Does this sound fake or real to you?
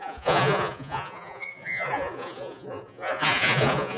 fake